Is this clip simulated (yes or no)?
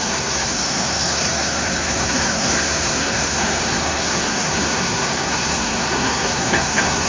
yes